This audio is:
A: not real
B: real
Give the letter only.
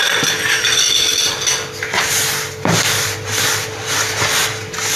B